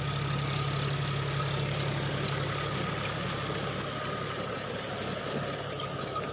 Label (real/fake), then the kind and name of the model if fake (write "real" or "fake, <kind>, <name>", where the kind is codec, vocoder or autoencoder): real